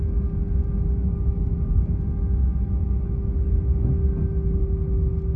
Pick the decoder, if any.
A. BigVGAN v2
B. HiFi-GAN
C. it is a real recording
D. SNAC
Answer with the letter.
C